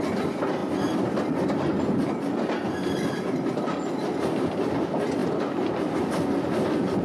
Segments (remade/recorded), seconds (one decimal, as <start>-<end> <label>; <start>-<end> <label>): 0.0-7.0 recorded